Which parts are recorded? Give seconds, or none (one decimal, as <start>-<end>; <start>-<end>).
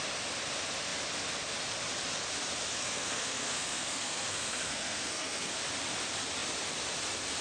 0.0-2.8; 5.5-7.4